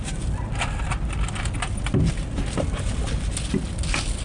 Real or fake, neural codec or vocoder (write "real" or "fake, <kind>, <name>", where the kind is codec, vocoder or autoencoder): real